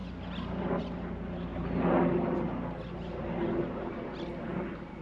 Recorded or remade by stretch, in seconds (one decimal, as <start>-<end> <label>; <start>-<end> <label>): 0.0-5.0 recorded

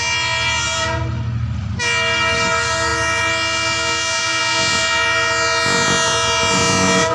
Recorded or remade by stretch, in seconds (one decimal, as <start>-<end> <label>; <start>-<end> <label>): 0.0-7.1 recorded

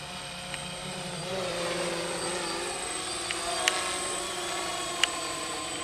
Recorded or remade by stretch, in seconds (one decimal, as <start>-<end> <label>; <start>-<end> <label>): 0.0-0.8 recorded; 0.8-1.9 remade; 1.9-4.7 recorded; 4.7-5.8 remade

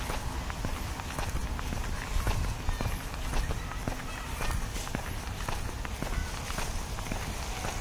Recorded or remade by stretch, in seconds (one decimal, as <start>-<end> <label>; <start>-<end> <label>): 0.0-6.2 recorded; 6.2-7.8 remade

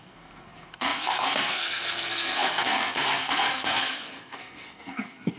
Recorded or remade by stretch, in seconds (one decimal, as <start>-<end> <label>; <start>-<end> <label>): 0.0-5.4 remade

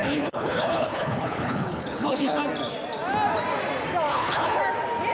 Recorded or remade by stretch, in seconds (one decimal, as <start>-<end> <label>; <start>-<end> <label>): 0.0-2.4 remade; 2.4-4.1 recorded; 4.1-4.6 remade; 4.6-5.1 recorded

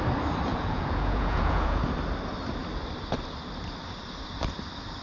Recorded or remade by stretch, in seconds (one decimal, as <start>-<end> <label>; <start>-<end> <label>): 0.0-0.5 recorded; 0.5-1.8 remade; 1.8-5.0 recorded